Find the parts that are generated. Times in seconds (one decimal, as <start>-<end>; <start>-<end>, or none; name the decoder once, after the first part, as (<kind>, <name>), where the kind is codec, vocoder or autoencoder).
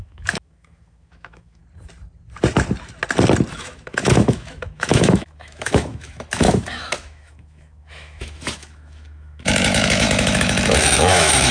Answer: 0.0-1.6 (autoencoder, DAC-VAE); 3.5-11.5